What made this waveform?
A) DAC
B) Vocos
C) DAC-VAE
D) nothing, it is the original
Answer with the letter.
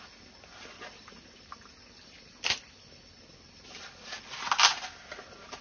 D